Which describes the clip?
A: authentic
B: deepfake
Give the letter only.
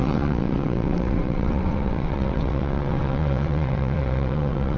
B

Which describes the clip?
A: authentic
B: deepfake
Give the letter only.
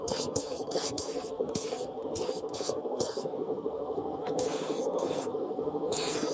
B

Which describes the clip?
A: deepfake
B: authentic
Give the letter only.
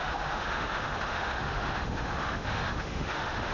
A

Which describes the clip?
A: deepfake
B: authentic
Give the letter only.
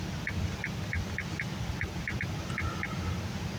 B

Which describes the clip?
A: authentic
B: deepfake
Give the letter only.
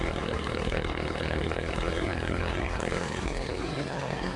B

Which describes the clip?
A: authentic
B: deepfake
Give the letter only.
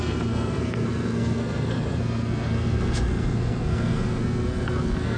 B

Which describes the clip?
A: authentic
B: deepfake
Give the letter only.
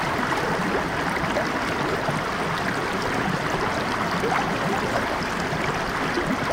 A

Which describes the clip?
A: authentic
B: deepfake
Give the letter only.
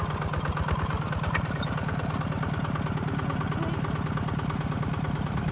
A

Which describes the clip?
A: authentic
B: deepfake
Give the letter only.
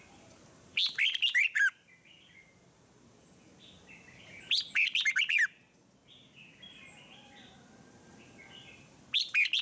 A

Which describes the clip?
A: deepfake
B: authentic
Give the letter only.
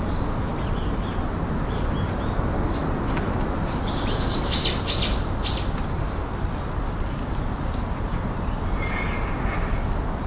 B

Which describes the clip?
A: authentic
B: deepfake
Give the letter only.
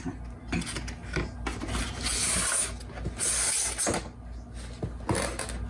A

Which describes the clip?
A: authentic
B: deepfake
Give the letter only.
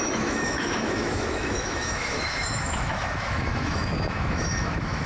B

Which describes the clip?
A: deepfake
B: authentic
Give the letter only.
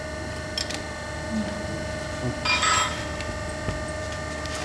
B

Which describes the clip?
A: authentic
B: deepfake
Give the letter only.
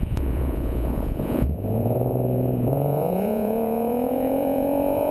B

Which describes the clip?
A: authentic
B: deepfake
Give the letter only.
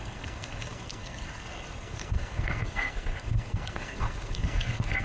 B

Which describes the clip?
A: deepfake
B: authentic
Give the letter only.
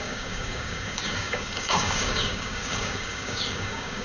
A